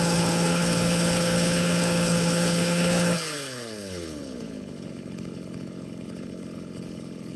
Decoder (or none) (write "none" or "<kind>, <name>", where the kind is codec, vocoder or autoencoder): codec, HILCodec